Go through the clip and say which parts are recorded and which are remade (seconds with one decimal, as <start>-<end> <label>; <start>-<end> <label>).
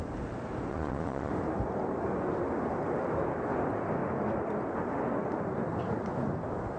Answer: 0.0-0.7 recorded; 0.7-1.3 remade; 1.3-6.8 recorded